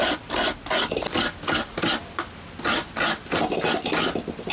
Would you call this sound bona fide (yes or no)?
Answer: yes